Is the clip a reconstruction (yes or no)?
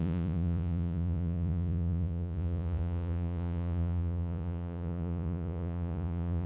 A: yes